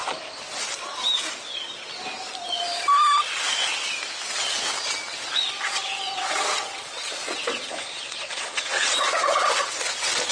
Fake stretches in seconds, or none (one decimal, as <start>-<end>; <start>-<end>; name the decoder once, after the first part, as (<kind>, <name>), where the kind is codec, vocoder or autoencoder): 5.6-9.7 (vocoder, WaveNeXt)